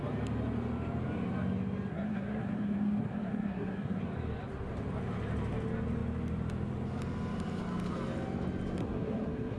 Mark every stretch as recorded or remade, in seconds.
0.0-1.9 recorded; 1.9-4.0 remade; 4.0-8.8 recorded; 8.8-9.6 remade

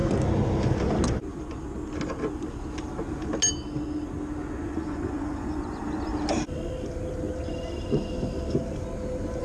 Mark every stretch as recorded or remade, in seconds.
0.0-4.7 recorded; 4.7-6.1 remade; 6.1-9.4 recorded

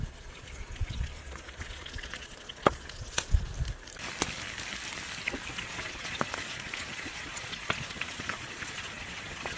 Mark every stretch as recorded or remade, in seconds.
0.0-3.5 remade; 3.5-5.5 recorded; 5.5-9.6 remade

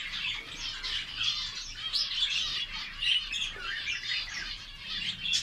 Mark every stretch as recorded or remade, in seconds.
0.0-1.7 recorded; 1.7-4.6 remade; 4.6-5.4 recorded